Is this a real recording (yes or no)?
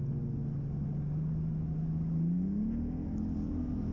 yes